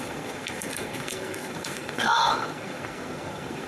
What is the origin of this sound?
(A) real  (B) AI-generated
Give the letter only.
B